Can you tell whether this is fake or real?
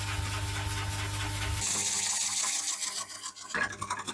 real